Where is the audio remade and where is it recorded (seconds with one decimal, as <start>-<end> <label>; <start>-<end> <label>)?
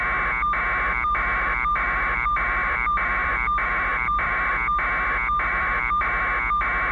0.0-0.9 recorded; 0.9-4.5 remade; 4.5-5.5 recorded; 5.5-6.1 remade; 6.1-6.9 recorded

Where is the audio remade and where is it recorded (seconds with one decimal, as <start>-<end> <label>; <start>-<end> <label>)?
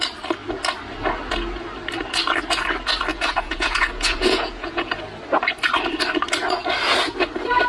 0.0-3.1 recorded; 3.1-4.9 remade; 4.9-7.7 recorded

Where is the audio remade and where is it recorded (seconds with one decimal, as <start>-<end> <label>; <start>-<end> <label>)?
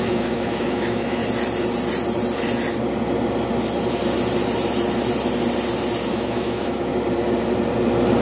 0.0-1.2 remade; 1.2-6.1 recorded; 6.1-6.9 remade; 6.9-8.2 recorded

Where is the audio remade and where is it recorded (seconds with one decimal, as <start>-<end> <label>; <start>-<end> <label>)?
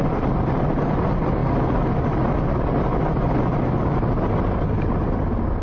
0.0-5.6 recorded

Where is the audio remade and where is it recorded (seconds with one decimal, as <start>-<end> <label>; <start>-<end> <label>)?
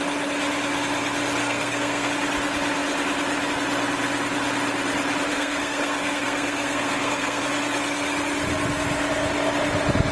0.0-1.4 recorded; 1.4-2.1 remade; 2.1-5.3 recorded; 5.3-7.4 remade; 7.4-10.1 recorded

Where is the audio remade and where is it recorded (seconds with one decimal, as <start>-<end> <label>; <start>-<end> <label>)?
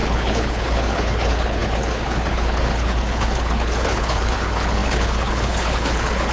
0.0-6.3 remade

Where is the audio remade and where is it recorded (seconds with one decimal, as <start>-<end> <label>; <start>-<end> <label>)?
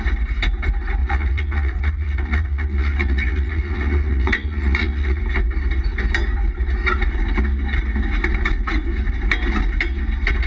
0.0-1.0 recorded; 1.0-5.2 remade; 5.2-10.5 recorded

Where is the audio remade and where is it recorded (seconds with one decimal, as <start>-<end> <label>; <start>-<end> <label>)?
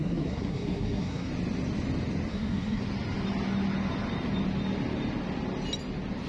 0.0-1.3 remade; 1.3-2.3 recorded; 2.3-2.8 remade; 2.8-6.3 recorded